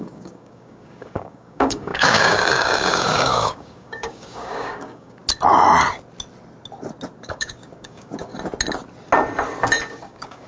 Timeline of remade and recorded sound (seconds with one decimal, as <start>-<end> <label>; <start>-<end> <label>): 0.0-5.2 remade; 5.2-7.2 recorded; 7.2-8.3 remade; 8.3-9.9 recorded; 9.9-10.5 remade